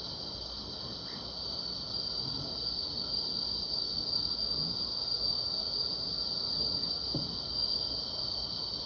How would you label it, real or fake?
real